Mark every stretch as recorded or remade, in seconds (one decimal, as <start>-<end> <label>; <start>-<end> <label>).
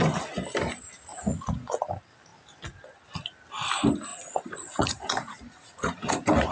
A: 0.0-1.1 recorded; 1.1-1.7 remade; 1.7-4.1 recorded; 4.1-6.5 remade